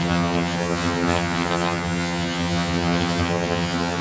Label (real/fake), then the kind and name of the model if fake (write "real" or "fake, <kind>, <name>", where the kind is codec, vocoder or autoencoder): fake, vocoder, HiFi-GAN